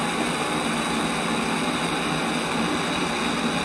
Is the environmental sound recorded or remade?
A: recorded